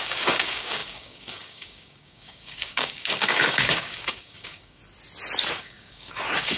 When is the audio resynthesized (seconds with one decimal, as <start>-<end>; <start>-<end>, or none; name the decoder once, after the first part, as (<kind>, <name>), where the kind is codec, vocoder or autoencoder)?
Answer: 0.0-4.8 (codec, DAC); 5.5-6.6